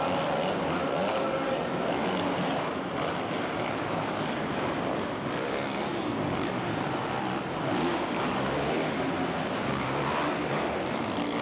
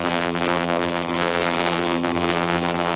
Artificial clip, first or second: second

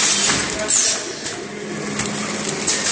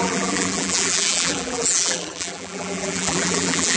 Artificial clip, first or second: second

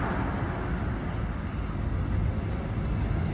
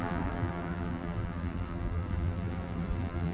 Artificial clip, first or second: second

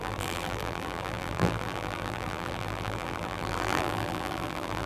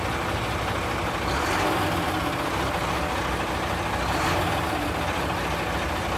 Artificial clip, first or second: first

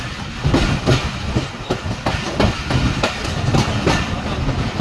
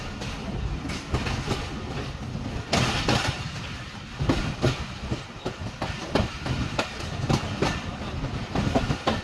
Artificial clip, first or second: second